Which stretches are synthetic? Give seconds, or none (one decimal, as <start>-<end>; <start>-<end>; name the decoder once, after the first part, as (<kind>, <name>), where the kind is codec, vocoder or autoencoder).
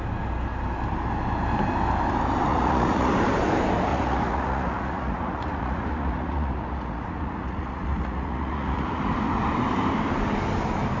2.5-3.1 (vocoder, Vocos); 3.9-9.0